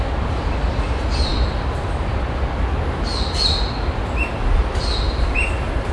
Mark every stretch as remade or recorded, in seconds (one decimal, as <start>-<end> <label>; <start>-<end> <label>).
0.0-5.9 recorded